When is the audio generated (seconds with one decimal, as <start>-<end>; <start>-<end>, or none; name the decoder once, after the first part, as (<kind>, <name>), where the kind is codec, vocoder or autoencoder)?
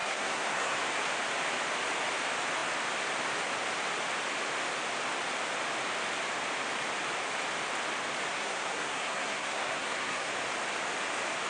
0.0-0.8 (codec, SNAC); 8.3-10.3